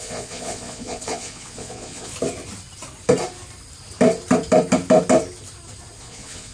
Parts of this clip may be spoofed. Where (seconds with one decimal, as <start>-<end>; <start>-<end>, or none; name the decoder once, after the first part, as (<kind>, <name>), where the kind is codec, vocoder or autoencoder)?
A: 0.0-2.1 (vocoder, Vocos); 6.0-6.5